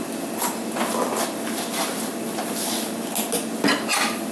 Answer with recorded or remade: recorded